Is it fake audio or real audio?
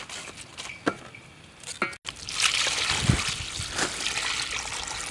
real